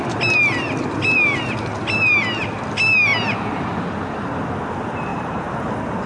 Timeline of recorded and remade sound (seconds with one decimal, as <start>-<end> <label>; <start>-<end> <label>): 0.0-5.1 recorded; 5.1-6.1 remade